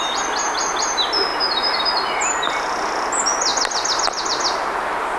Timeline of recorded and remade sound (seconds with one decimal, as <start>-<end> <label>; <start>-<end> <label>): 0.0-5.2 recorded